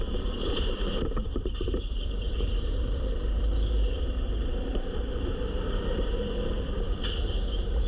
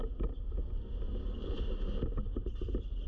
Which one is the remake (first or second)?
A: first